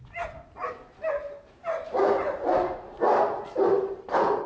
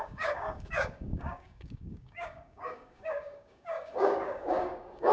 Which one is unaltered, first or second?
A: first